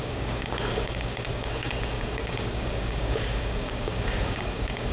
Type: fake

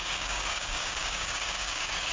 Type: fake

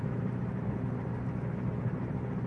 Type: real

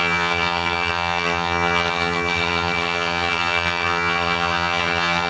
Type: fake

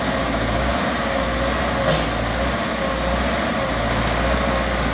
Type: real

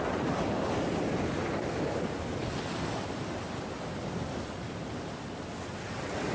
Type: real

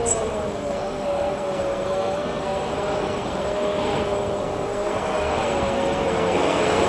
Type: fake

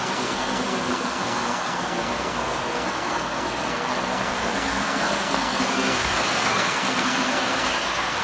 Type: fake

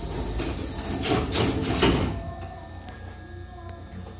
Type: real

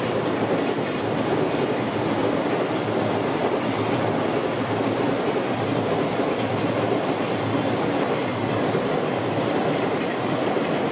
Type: real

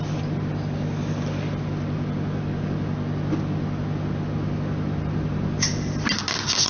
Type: real